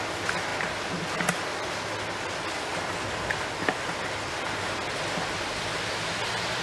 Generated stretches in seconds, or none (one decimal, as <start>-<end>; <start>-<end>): none